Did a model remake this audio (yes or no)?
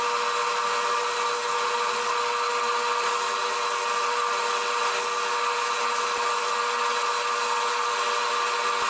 no